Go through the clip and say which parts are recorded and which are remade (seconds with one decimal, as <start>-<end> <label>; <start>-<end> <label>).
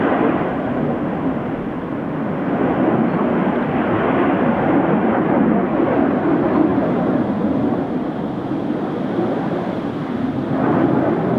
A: 0.0-11.4 recorded